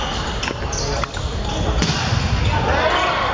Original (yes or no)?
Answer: yes